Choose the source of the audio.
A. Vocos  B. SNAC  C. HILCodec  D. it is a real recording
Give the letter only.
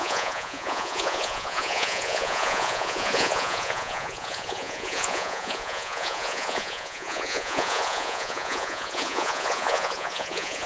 A